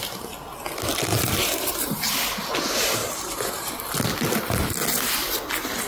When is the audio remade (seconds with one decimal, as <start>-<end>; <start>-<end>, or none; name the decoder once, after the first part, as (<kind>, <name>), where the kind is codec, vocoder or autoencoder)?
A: 1.1-2.0 (vocoder, BigVGAN v2); 3.0-3.7